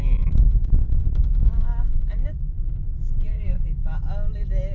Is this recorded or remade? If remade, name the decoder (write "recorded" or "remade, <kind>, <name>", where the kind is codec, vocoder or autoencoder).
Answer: recorded